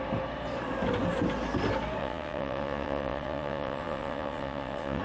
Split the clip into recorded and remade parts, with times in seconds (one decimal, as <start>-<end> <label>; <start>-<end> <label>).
0.0-2.0 recorded; 2.0-5.0 remade